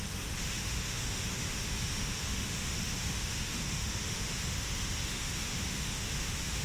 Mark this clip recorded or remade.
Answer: remade